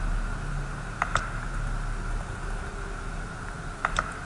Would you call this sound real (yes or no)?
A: yes